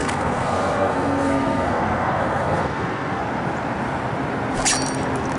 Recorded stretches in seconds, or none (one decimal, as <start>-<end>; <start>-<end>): 3.2-5.4